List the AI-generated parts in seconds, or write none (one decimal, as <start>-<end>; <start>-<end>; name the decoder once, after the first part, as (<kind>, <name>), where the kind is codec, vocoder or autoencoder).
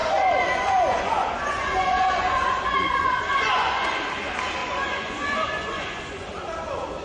0.0-4.1 (vocoder, Vocos); 4.6-6.3